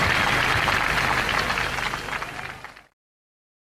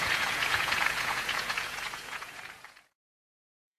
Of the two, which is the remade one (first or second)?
second